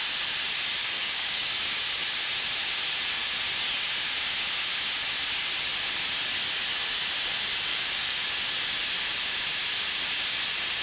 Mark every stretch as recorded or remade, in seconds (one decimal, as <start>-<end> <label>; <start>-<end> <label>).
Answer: 0.0-0.8 recorded; 0.8-1.5 remade; 1.5-7.7 recorded; 7.7-8.3 remade; 8.3-10.8 recorded